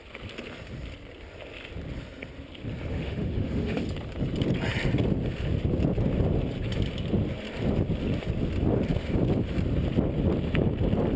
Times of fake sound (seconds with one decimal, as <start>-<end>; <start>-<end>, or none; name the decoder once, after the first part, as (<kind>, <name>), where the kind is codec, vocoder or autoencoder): 2.9-3.8 (autoencoder, DAC-VAE)